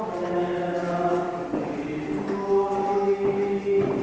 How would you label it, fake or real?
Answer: real